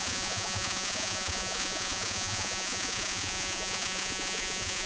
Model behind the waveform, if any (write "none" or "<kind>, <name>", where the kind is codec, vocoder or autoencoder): vocoder, Vocos